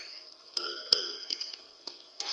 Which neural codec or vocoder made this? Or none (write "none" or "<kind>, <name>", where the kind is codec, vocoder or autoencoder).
codec, SNAC